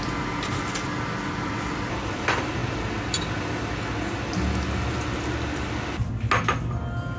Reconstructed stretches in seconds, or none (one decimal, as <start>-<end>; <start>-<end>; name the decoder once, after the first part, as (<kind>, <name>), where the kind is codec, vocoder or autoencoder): none